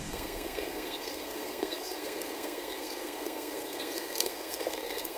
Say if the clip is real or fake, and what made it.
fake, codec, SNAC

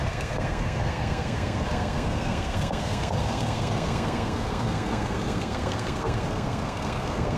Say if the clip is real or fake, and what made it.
fake, codec, SNAC